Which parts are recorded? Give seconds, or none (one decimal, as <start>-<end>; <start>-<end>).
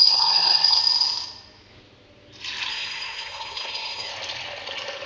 0.8-2.7; 4.1-5.1